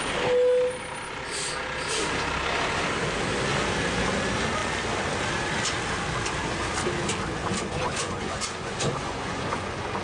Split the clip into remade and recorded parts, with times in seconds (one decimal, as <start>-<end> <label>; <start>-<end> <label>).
0.0-7.4 recorded; 7.4-10.0 remade